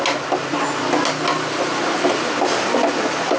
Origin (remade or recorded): recorded